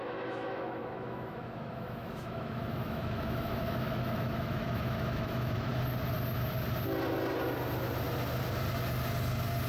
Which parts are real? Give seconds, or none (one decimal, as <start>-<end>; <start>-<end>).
5.7-9.7